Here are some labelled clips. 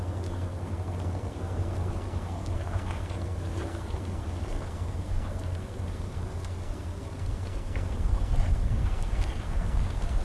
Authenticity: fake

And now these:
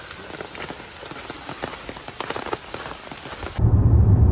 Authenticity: real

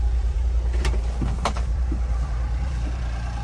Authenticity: fake